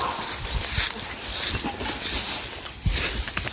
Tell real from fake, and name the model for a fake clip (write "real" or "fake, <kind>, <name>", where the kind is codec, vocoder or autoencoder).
real